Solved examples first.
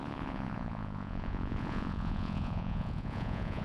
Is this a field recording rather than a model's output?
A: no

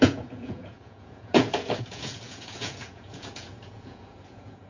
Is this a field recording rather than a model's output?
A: no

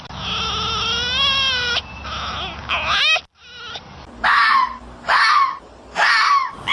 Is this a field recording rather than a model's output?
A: yes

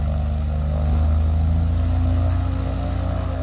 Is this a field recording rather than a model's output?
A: yes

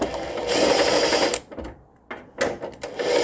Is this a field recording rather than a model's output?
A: yes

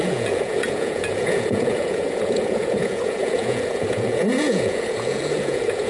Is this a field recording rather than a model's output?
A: no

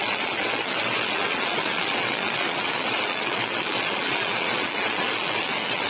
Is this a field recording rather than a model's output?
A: no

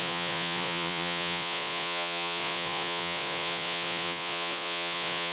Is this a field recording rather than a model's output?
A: no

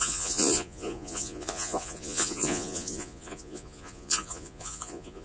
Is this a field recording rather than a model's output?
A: no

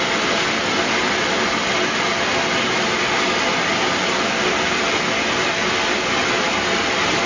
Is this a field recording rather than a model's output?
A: yes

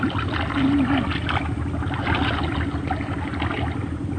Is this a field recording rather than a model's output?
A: yes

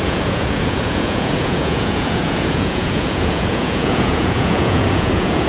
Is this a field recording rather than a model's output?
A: no